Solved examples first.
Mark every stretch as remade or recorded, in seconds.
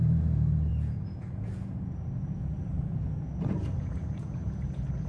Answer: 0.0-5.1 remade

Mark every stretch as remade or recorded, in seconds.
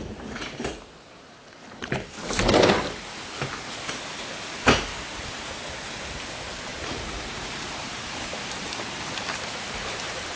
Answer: 0.0-6.7 recorded; 6.7-7.7 remade; 7.7-10.4 recorded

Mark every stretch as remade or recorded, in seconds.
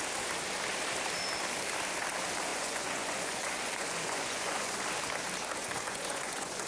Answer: 0.0-2.5 recorded; 2.5-4.8 remade; 4.8-5.6 recorded; 5.6-6.7 remade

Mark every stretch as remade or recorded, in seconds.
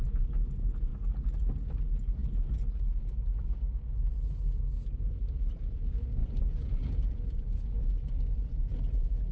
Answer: 0.0-0.9 remade; 0.9-1.8 recorded; 1.8-2.2 remade; 2.2-5.5 recorded; 5.5-9.3 remade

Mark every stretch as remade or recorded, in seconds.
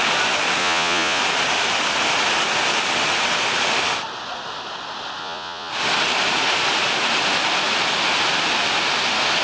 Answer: 0.0-0.6 recorded; 0.6-1.2 remade; 1.2-5.2 recorded; 5.2-5.7 remade; 5.7-9.4 recorded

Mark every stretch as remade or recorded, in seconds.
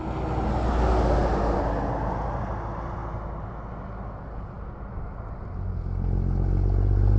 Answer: 0.0-7.2 recorded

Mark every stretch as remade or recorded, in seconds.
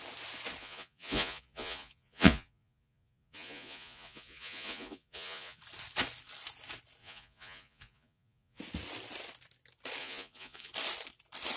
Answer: 0.0-0.6 recorded; 0.6-5.6 remade; 5.6-7.0 recorded; 7.0-8.6 remade; 8.6-10.0 recorded; 10.0-10.7 remade; 10.7-11.6 recorded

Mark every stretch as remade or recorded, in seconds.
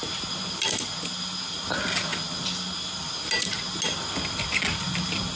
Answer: 0.0-5.4 recorded